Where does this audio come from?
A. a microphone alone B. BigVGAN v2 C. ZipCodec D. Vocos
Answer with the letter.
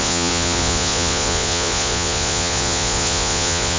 D